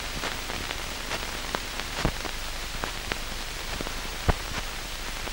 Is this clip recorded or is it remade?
remade